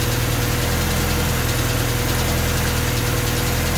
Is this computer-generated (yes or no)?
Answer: no